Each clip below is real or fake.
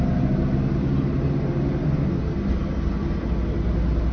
real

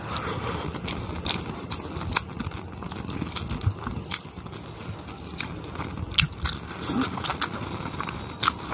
real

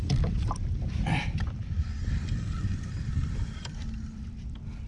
fake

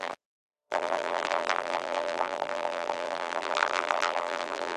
fake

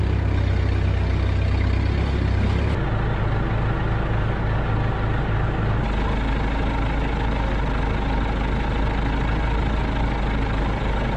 real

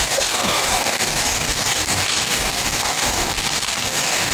fake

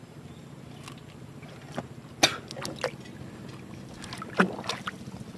real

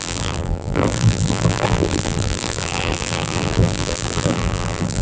fake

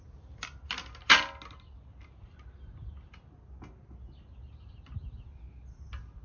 real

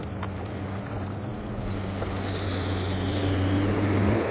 real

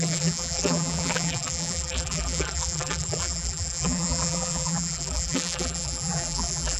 fake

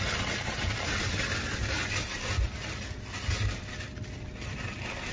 real